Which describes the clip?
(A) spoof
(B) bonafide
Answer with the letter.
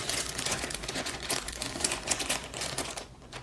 A